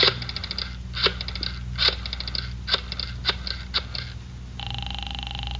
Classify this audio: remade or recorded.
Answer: recorded